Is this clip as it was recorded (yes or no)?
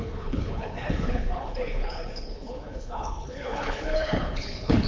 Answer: no